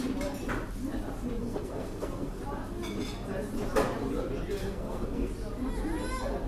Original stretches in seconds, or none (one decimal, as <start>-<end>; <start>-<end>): 0.0-1.4; 2.4-4.6; 5.3-6.5